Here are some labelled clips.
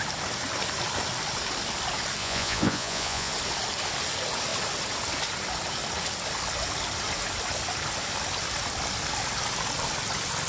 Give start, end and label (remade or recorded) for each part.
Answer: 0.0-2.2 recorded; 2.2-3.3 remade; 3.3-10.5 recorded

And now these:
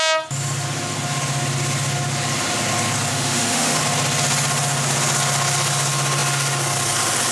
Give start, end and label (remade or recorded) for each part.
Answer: 0.0-3.1 recorded; 3.1-3.8 remade; 3.8-7.3 recorded

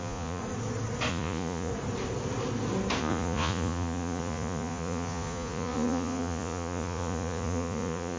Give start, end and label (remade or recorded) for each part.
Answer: 0.0-0.4 remade; 0.4-1.1 recorded; 1.1-1.7 remade; 1.7-3.0 recorded; 3.0-8.2 remade

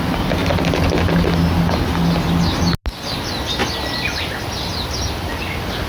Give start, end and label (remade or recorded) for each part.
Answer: 0.0-5.9 recorded

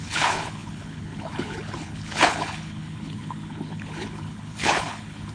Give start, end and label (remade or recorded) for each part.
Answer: 0.0-5.3 remade

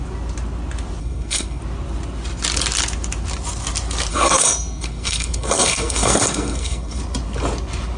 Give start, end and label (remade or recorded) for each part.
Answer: 0.0-1.0 recorded; 1.0-1.6 remade; 1.6-4.1 recorded; 4.1-7.0 remade; 7.0-8.0 recorded